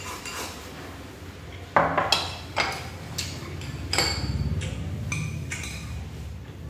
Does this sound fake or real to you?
real